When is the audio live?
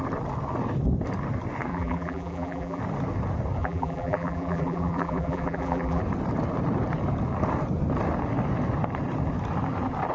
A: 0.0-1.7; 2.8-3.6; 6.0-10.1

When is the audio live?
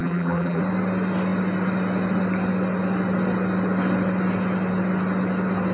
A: 0.6-5.7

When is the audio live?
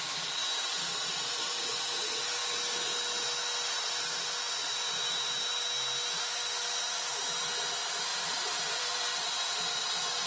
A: 0.0-8.1; 9.9-10.3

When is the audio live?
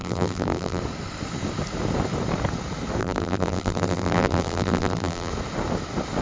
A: 0.8-3.0; 5.3-6.2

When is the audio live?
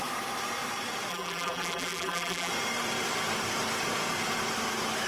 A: 0.0-1.1; 2.5-5.1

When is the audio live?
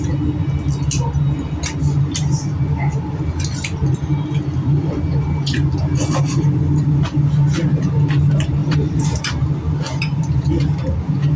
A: 0.0-8.6; 9.3-11.4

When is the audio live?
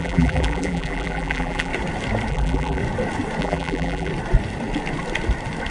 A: 1.7-2.3; 2.8-3.4; 4.1-5.7